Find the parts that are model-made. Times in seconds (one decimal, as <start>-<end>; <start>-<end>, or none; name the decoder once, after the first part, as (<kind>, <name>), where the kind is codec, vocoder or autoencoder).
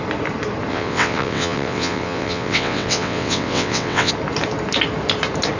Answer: 0.7-4.1 (vocoder, WaveNeXt)